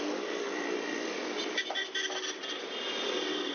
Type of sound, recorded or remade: recorded